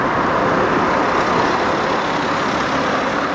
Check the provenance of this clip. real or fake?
real